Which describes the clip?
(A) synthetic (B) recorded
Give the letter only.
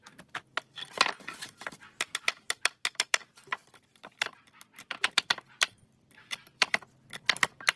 A